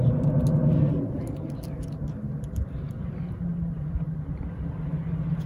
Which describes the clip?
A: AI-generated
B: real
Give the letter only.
B